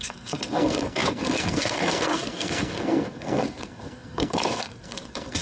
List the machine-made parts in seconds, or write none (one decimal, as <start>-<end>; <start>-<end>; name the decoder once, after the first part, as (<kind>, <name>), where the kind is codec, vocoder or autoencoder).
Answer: 0.0-5.4 (codec, SNAC)

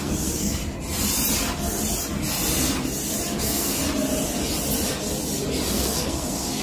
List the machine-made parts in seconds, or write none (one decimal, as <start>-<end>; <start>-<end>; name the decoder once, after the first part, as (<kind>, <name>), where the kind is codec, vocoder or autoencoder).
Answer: 0.0-0.6 (codec, SNAC); 3.4-3.8; 5.7-6.6